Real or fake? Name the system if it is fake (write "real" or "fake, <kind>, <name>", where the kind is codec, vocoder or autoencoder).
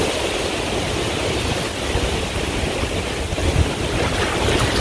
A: real